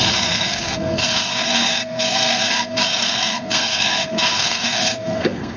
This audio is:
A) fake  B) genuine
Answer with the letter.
A